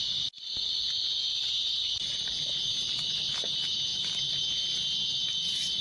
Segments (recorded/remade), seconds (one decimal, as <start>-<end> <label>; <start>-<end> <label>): 0.0-1.4 recorded; 1.4-2.0 remade; 2.0-3.9 recorded; 3.9-5.8 remade